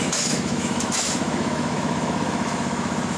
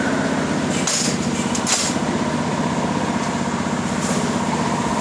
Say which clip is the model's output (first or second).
first